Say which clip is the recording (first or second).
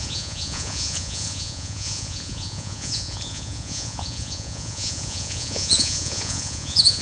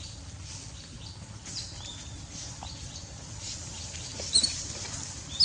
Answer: second